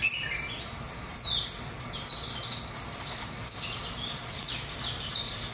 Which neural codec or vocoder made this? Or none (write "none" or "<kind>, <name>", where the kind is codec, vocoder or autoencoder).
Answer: none